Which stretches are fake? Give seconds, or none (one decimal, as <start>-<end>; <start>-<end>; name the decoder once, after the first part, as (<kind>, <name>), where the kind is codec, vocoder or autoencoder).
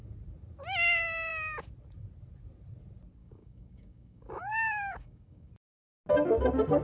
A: 3.2-5.5 (codec, DAC)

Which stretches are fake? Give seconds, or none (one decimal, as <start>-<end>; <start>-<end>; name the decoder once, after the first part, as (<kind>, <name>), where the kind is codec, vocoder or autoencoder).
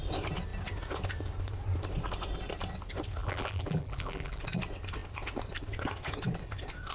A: 3.2-4.4 (vocoder, BigVGAN v2)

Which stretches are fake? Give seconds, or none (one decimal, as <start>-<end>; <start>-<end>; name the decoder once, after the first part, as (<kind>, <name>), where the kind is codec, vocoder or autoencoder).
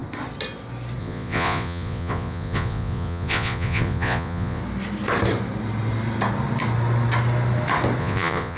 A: 1.0-4.6 (vocoder, Vocos); 8.0-8.6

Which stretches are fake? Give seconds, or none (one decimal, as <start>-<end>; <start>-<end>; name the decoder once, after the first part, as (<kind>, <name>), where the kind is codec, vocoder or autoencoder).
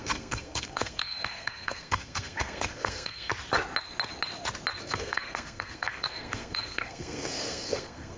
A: 0.0-3.3 (codec, SNAC); 4.8-8.2